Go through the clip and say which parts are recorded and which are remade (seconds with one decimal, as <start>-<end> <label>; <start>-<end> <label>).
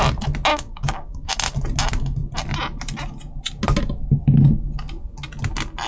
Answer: 0.0-0.5 recorded; 0.5-1.3 remade; 1.3-5.9 recorded